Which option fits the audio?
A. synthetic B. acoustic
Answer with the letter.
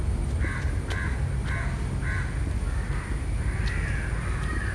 B